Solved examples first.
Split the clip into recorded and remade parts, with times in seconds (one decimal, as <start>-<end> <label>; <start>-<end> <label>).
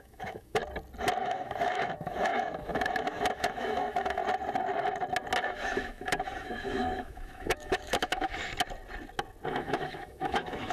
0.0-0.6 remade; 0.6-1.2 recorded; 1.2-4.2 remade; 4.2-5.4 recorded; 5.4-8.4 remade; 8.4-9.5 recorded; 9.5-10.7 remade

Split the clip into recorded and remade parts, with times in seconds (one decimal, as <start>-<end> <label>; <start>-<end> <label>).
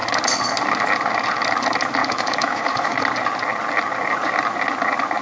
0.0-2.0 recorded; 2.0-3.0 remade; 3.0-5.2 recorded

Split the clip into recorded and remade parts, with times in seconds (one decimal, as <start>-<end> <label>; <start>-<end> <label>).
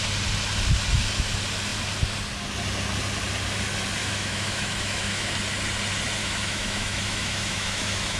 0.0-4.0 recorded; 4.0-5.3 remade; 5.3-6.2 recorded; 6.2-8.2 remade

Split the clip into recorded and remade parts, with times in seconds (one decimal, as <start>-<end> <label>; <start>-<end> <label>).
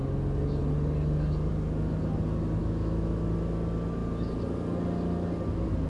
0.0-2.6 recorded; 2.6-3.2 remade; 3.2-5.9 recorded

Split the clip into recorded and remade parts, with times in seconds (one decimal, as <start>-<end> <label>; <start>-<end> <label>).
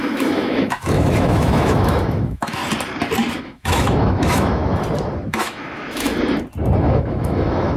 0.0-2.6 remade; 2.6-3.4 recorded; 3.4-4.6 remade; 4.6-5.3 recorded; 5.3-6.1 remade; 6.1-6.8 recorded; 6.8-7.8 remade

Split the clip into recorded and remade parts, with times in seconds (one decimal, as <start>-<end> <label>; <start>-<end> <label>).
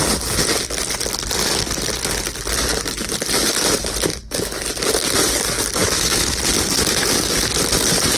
0.0-4.1 recorded; 4.1-4.6 remade; 4.6-5.8 recorded; 5.8-6.4 remade; 6.4-8.2 recorded